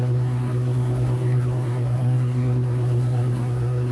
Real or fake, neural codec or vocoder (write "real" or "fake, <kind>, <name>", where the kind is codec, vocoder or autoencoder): fake, codec, SNAC